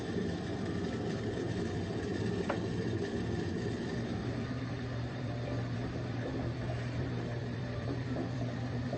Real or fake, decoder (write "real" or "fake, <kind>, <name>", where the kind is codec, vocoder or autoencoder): fake, vocoder, BigVGAN v2